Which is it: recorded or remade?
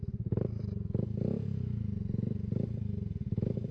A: recorded